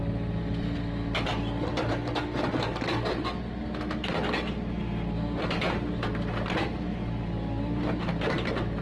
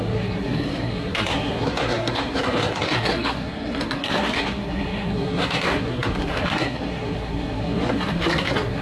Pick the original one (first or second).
first